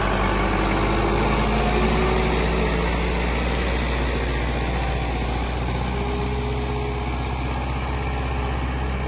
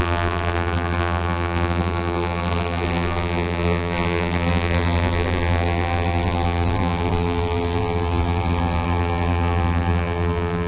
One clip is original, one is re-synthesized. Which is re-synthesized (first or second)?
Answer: second